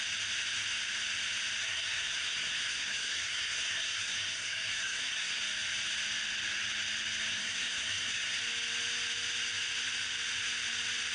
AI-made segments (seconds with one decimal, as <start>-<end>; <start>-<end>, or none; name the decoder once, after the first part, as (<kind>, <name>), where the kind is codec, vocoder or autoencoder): 1.6-5.4 (codec, SNAC); 7.3-8.4